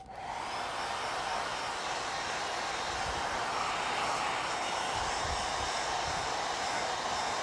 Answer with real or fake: real